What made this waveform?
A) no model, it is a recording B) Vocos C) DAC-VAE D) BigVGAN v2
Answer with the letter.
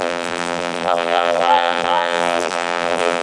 D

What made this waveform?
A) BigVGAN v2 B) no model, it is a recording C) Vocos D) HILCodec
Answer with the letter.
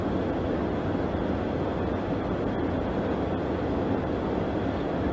B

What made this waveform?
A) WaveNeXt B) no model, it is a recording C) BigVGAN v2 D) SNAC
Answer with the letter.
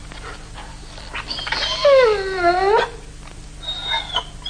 B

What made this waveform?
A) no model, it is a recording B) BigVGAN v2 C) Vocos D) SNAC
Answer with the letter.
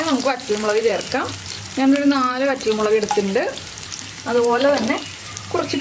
B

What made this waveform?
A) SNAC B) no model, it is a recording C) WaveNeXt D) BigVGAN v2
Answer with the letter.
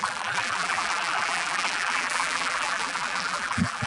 D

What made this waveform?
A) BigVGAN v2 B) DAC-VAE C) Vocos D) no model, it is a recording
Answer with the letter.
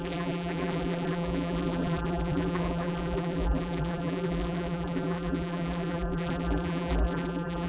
A